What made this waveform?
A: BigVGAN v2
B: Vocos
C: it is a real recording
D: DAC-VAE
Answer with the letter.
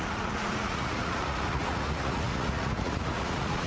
B